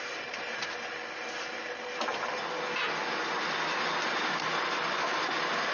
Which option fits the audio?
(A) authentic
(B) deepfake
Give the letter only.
A